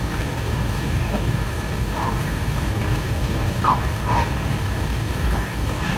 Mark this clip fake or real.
fake